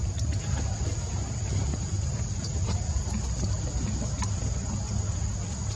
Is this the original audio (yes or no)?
yes